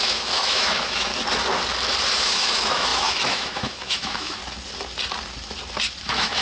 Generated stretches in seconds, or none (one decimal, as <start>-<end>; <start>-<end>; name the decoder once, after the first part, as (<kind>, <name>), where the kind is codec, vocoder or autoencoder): 0.0-1.1 (autoencoder, DAC-VAE); 2.2-4.4; 6.0-6.4